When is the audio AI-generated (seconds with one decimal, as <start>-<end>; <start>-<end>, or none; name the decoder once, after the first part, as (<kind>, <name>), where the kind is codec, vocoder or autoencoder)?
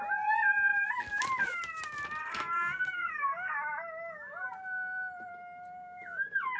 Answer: 2.2-3.5 (codec, SNAC)